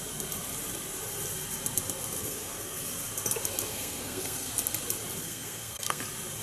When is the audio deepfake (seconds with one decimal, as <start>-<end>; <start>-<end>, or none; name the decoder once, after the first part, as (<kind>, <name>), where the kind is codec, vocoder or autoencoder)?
2.2-2.9 (codec, SNAC); 3.7-4.5; 5.2-6.0

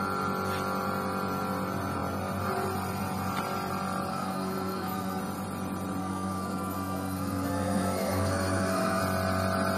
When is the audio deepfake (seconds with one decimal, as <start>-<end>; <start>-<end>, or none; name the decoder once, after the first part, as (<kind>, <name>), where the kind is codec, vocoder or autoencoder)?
4.1-5.2 (codec, SNAC); 6.0-9.0

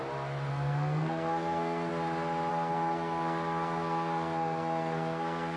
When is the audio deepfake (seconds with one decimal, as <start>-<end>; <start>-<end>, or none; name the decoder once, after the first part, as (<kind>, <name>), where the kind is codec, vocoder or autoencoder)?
0.5-1.9 (codec, SNAC); 2.5-5.6